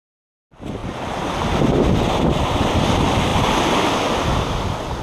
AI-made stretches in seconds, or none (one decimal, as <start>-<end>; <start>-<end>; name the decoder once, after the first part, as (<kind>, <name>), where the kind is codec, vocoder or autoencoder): none